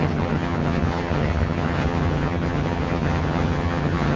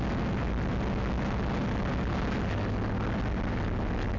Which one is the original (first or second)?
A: second